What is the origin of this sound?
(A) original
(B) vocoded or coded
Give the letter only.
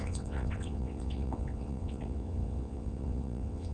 B